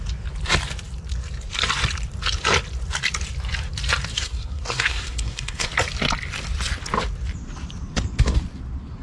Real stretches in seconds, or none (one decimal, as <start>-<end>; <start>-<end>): 0.0-4.1; 5.7-9.0